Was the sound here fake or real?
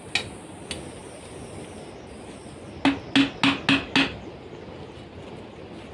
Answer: real